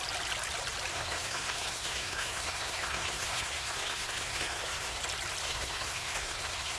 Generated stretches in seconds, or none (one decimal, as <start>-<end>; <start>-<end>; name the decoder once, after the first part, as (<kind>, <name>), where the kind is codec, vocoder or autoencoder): 0.9-5.0 (codec, SNAC); 5.4-6.8